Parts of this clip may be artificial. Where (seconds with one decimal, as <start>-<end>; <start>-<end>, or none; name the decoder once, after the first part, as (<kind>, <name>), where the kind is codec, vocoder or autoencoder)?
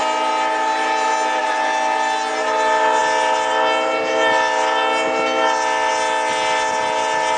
none